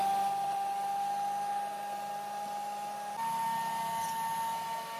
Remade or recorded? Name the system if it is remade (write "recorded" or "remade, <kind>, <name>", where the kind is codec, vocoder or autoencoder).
recorded